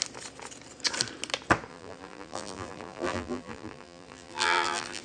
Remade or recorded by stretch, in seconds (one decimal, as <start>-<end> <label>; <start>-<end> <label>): 0.0-1.7 recorded; 1.7-5.0 remade